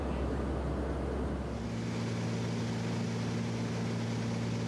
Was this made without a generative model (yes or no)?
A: yes